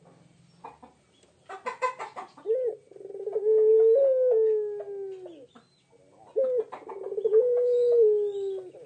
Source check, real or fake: real